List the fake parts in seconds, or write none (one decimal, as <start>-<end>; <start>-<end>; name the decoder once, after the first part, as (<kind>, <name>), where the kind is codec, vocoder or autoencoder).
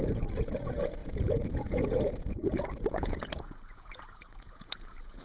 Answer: 0.0-5.2 (vocoder, Vocos)